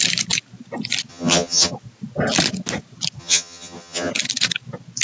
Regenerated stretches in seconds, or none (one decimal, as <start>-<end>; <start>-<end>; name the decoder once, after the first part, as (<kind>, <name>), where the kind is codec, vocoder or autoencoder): 1.1-1.7 (vocoder, HiFi-GAN); 3.2-4.1